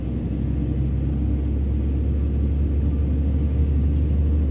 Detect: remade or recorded recorded